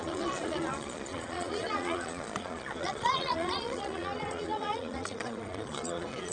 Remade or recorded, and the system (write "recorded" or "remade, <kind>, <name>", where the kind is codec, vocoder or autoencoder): remade, vocoder, Vocos